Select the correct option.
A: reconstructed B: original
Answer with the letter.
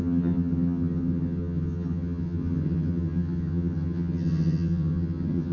A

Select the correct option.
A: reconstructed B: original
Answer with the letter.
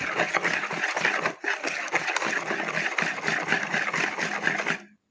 B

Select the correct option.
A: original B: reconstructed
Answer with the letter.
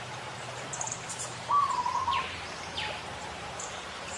B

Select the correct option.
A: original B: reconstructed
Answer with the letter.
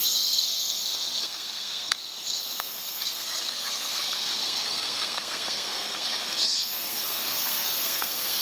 B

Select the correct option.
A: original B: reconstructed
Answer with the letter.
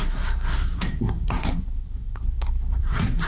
B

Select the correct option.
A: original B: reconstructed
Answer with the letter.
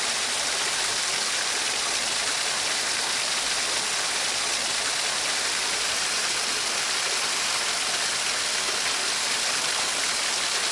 A